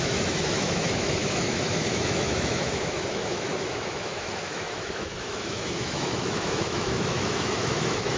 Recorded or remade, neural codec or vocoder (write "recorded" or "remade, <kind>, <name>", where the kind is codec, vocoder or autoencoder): remade, autoencoder, DAC-VAE